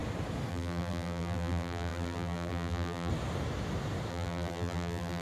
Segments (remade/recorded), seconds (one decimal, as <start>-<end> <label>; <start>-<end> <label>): 0.0-0.5 recorded; 0.5-3.1 remade; 3.1-4.1 recorded; 4.1-5.2 remade